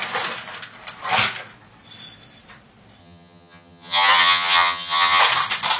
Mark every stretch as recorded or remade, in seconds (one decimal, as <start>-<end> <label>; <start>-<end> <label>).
0.0-3.0 recorded; 3.0-5.2 remade; 5.2-5.8 recorded